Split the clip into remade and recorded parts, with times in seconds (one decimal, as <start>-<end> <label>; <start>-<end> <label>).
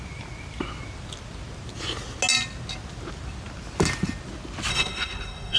0.0-4.7 recorded; 4.7-5.6 remade